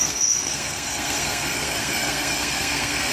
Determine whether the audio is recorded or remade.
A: remade